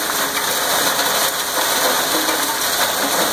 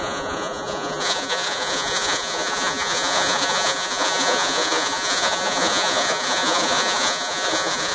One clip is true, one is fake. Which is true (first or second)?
first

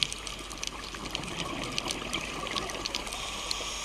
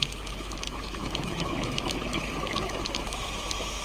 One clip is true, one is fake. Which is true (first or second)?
first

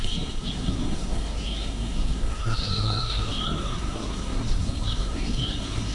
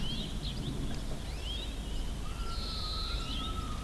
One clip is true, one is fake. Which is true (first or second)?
second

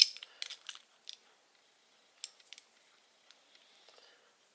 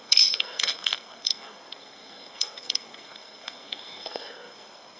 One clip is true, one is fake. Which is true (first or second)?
first